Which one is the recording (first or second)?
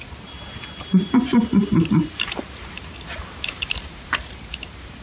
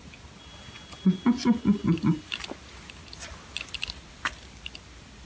second